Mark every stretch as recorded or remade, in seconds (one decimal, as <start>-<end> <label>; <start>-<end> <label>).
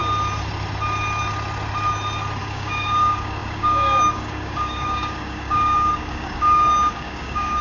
0.0-2.4 recorded; 2.4-7.6 remade